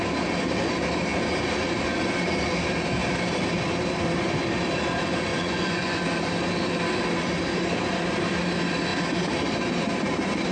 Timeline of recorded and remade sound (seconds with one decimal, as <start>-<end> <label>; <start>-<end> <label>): 0.0-5.3 recorded; 5.3-6.0 remade; 6.0-10.5 recorded